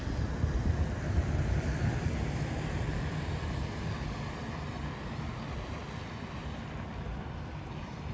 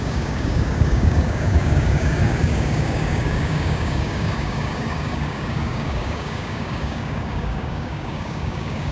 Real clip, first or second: first